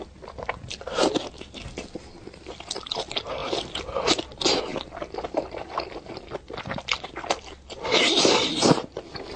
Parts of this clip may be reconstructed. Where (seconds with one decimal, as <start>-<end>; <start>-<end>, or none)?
none